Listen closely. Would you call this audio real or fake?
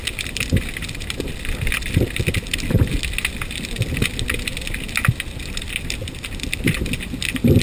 real